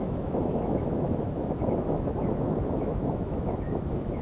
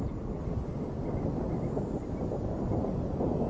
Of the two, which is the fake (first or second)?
first